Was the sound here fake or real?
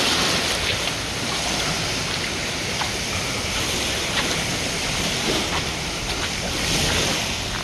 real